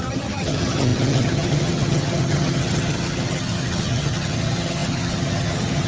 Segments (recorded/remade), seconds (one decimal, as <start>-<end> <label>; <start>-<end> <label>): 0.0-5.9 remade